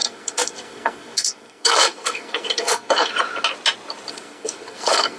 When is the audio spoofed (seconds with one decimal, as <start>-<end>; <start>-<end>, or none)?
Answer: 0.0-3.1; 4.1-5.2